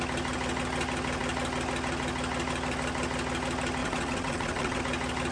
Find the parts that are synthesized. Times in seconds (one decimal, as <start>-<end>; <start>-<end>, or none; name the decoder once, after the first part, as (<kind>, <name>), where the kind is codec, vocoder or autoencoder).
3.8-4.8 (vocoder, WaveNeXt)